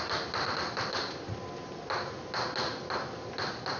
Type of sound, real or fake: real